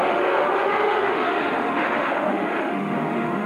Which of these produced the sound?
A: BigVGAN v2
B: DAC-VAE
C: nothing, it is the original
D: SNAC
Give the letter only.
B